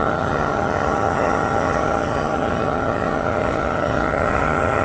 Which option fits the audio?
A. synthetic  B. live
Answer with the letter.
A